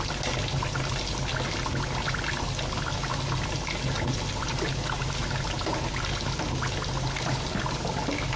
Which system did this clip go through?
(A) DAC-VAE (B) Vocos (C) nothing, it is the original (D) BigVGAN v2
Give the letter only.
C